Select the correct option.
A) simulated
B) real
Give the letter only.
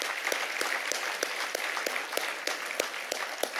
B